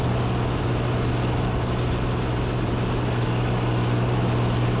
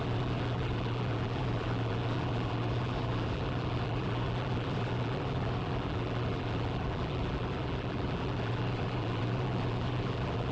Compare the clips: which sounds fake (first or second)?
second